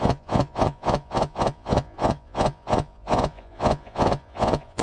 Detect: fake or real fake